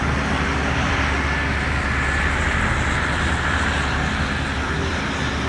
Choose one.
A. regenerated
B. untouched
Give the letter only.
B